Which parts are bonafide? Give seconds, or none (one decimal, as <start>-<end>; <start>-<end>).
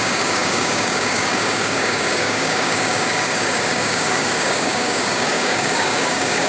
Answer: none